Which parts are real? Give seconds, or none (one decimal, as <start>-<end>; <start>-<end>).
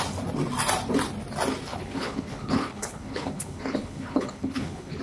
0.0-1.7